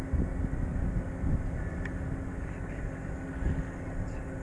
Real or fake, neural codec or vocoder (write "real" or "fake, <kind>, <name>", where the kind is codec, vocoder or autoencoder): real